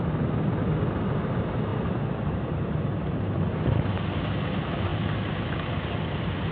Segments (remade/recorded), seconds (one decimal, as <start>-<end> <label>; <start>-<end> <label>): 0.0-1.7 recorded; 1.7-3.4 remade; 3.4-6.5 recorded